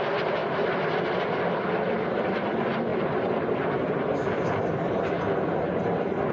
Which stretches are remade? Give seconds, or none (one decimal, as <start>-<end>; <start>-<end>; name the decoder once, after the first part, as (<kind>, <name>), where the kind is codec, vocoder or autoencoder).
none